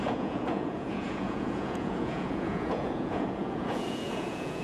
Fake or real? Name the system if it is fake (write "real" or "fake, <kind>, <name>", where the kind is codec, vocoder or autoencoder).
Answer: fake, vocoder, Vocos